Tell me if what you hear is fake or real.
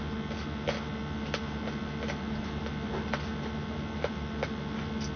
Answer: real